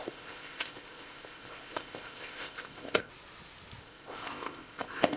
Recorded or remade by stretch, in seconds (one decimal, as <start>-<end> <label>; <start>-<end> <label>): 0.0-3.1 remade; 3.1-3.8 recorded; 3.8-5.2 remade